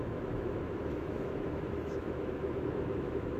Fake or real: fake